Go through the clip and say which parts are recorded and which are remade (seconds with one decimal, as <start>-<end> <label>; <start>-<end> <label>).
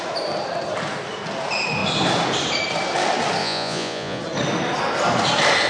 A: 0.0-3.4 recorded; 3.4-4.2 remade; 4.2-5.7 recorded